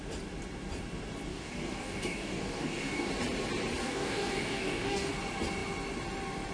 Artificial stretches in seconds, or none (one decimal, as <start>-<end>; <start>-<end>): 1.3-3.1; 3.8-5.1